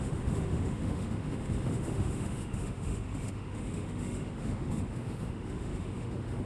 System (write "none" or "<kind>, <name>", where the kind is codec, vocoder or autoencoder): autoencoder, DAC-VAE